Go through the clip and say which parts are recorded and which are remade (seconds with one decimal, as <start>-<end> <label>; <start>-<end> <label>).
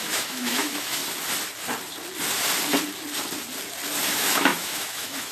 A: 0.0-1.0 remade; 1.0-4.0 recorded; 4.0-5.3 remade